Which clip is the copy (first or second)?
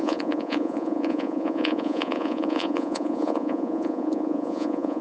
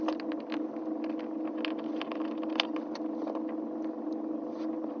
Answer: first